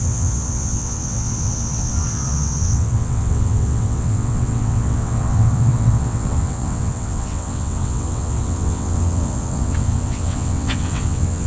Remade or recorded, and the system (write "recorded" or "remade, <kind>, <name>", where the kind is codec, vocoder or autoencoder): remade, vocoder, WaveNeXt